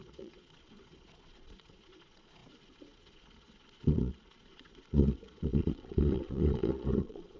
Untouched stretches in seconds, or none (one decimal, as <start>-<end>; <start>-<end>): none